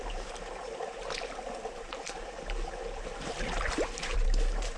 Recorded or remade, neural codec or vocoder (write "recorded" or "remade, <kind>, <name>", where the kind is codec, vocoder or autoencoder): remade, vocoder, BigVGAN v2